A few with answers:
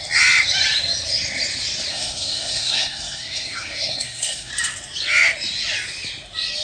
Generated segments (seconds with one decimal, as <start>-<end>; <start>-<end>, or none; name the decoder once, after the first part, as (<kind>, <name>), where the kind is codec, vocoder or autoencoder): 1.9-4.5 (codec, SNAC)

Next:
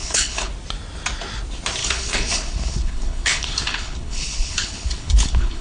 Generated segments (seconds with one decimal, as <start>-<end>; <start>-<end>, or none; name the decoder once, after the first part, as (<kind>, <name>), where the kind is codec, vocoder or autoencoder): 0.0-0.5 (codec, HILCodec); 1.8-5.6

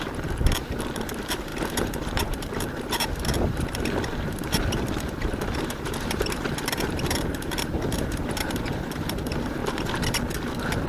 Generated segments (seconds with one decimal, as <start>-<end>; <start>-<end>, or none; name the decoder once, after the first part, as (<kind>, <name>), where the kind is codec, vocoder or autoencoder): 0.0-9.6 (vocoder, BigVGAN v2)

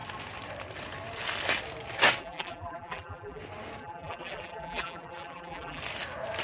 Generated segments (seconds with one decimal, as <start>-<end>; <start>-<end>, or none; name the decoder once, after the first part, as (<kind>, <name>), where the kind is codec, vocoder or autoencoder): 2.2-3.4 (vocoder, BigVGAN v2); 3.8-5.8

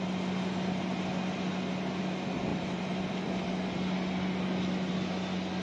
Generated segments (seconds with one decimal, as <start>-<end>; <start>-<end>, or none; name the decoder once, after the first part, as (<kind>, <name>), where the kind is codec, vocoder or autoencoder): 2.5-3.1 (vocoder, BigVGAN v2)